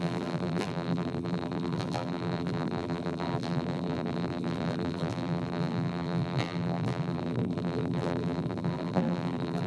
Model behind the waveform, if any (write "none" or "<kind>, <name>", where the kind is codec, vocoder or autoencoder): vocoder, BigVGAN v2